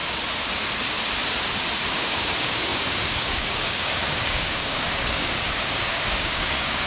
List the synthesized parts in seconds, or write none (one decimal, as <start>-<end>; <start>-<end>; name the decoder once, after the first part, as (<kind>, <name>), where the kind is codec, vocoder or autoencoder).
1.9-6.9 (codec, DAC)